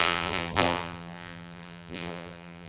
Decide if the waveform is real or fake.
fake